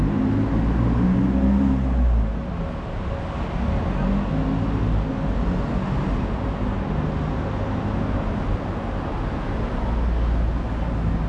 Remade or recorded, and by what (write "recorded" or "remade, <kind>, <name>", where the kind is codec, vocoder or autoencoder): recorded